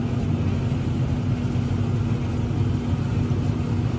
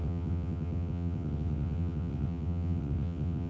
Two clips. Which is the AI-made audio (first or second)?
second